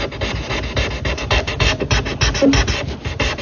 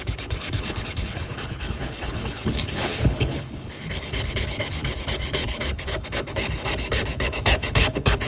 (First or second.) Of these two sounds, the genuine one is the first